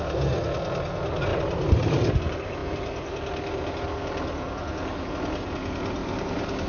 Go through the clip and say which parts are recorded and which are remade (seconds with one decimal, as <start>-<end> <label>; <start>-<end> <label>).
0.0-1.3 recorded; 1.3-2.2 remade; 2.2-6.0 recorded; 6.0-6.7 remade